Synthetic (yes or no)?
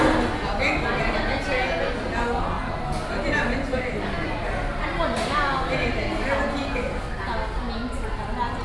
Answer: no